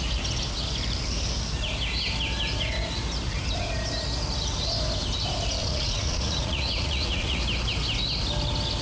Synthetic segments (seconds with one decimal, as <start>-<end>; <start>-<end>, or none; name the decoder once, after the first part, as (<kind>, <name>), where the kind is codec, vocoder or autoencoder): 5.6-7.4 (vocoder, Vocos)